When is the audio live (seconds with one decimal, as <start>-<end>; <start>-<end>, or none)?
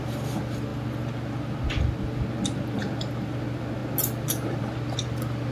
0.0-5.5